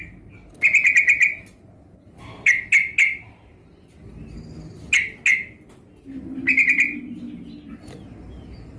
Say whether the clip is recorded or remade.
recorded